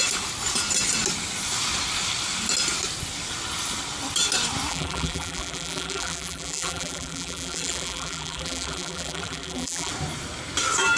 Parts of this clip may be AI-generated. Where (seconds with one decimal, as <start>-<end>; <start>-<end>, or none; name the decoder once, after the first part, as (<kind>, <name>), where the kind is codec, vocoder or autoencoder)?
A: 4.7-9.9 (vocoder, BigVGAN v2)